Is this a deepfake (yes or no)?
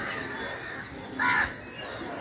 no